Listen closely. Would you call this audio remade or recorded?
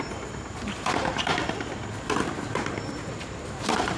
remade